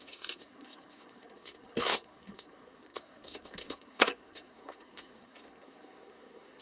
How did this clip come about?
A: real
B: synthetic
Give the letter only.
B